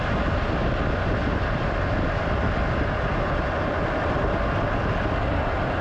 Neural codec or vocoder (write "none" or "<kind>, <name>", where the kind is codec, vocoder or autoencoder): none